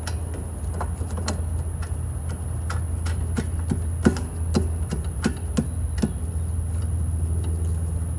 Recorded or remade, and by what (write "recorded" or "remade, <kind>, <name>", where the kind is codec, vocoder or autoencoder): recorded